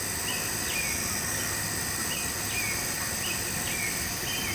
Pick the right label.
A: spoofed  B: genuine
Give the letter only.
B